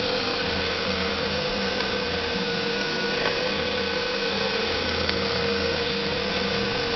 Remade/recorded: remade